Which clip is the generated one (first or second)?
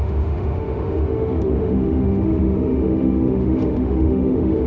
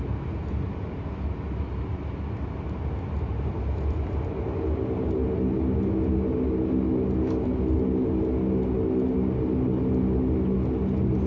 first